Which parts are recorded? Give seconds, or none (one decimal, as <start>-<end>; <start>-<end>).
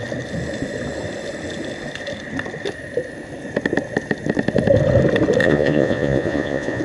0.0-5.4